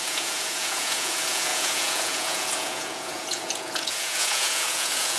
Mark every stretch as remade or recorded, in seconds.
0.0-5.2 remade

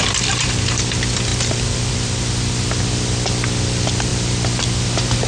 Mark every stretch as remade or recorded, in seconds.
0.0-5.3 recorded

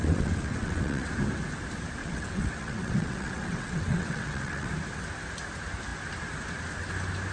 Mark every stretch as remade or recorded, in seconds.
0.0-1.1 remade; 1.1-2.0 recorded; 2.0-4.7 remade; 4.7-7.3 recorded

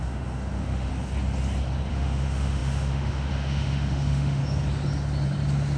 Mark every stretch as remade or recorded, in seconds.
0.0-0.9 remade; 0.9-1.9 recorded; 1.9-4.4 remade; 4.4-5.8 recorded